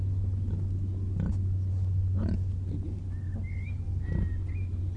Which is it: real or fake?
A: real